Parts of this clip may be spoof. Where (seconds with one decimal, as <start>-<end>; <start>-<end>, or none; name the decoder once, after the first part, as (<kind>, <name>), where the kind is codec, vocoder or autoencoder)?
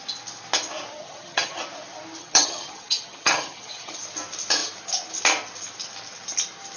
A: 0.9-1.6 (vocoder, HiFi-GAN); 2.2-4.0